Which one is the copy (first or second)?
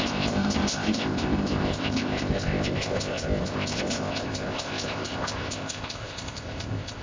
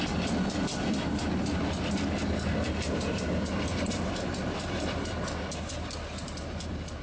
first